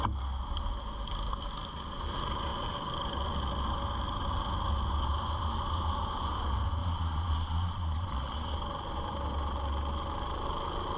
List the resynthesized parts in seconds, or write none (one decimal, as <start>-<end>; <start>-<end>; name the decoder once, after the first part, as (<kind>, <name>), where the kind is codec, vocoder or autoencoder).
6.8-8.5 (vocoder, Vocos)